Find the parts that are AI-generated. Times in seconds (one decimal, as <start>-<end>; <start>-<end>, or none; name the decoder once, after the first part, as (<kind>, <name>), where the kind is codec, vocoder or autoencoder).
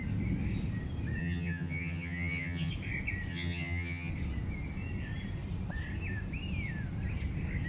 1.2-2.7 (vocoder, HiFi-GAN); 3.3-4.1